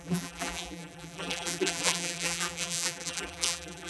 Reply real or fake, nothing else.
fake